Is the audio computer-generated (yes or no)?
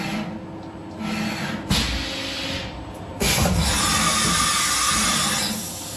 no